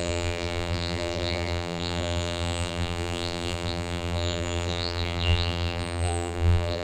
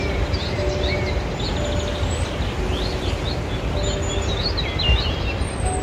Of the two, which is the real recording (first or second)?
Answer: second